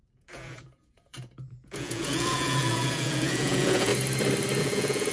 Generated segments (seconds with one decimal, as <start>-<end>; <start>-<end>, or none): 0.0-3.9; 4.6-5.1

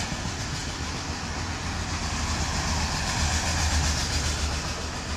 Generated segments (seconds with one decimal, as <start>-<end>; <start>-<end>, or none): none

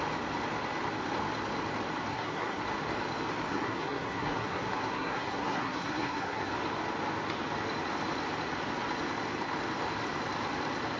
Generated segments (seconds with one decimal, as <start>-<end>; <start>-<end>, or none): 2.1-2.6; 3.5-6.5

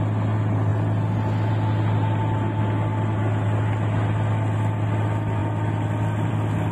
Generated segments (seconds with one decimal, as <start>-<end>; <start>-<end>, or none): none

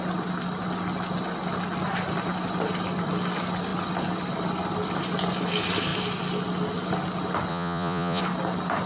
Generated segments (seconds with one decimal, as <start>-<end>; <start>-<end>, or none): 7.5-8.2

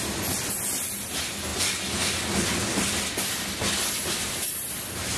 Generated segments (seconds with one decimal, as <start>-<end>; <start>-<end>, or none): none

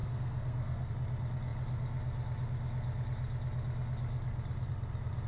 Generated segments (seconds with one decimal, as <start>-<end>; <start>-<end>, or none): 0.0-0.9